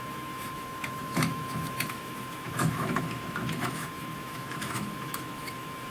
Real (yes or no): no